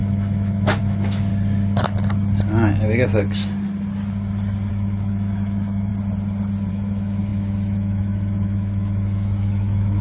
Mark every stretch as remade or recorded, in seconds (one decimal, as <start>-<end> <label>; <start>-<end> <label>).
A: 0.0-1.3 remade; 1.3-4.7 recorded; 4.7-5.9 remade; 5.9-6.7 recorded; 6.7-10.0 remade